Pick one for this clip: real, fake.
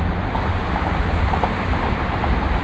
fake